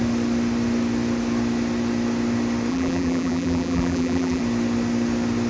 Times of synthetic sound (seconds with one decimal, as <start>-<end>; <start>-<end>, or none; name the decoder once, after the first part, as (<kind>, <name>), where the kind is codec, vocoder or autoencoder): 2.7-4.4 (vocoder, BigVGAN v2)